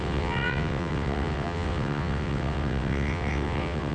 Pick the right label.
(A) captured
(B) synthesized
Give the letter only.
B